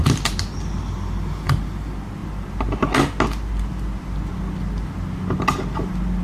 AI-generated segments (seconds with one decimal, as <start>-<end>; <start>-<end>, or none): none